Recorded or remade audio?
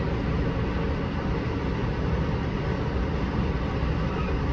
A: recorded